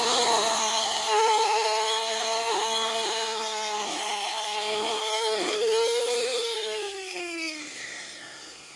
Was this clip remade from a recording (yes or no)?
yes